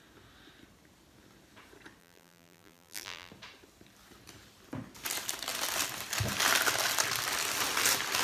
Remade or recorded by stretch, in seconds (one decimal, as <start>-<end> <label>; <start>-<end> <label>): 0.0-2.0 recorded; 2.0-3.3 remade; 3.3-8.2 recorded